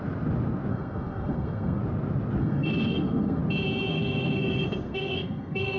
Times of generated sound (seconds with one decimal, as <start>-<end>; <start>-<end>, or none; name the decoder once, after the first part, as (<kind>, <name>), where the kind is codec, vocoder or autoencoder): 0.7-1.8 (codec, SNAC); 2.4-3.4; 3.9-5.8